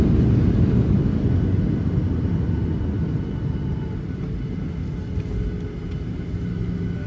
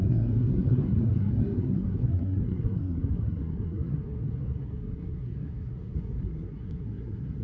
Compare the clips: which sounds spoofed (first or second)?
second